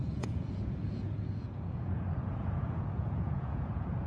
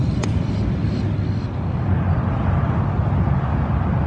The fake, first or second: first